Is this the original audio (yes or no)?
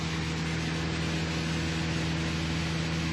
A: yes